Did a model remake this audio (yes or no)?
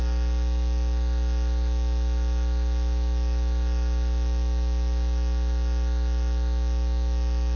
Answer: no